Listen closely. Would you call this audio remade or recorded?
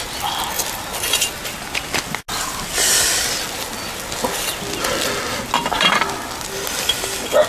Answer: recorded